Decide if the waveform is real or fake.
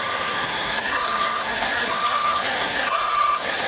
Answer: fake